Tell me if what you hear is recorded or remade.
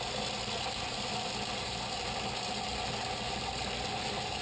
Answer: recorded